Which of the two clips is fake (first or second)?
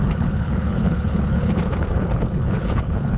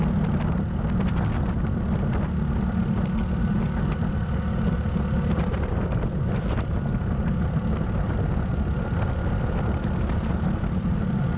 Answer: first